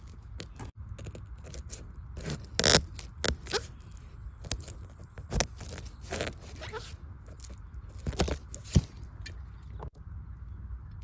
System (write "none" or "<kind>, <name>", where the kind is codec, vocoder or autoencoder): none